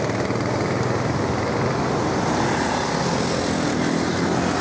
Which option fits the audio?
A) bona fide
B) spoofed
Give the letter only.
A